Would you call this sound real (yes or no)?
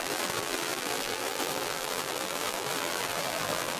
no